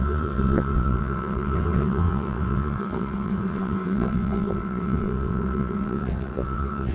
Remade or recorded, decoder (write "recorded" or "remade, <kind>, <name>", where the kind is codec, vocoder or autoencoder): remade, vocoder, WaveNeXt